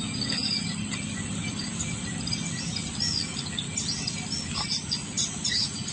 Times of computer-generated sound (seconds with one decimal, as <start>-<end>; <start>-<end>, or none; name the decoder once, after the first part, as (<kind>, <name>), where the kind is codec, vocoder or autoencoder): none